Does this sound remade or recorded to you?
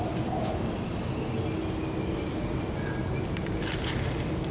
recorded